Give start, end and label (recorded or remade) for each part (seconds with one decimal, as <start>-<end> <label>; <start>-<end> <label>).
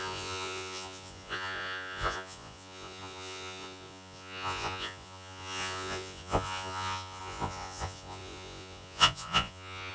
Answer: 0.0-9.9 remade